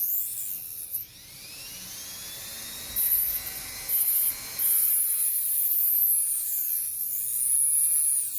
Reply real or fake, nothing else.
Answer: real